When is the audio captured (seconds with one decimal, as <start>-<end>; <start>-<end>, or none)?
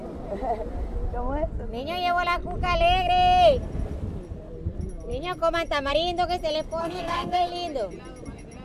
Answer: 0.0-6.8; 7.5-8.6